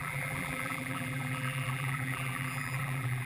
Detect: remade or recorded remade